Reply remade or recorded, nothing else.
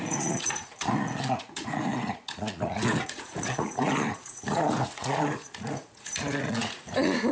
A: remade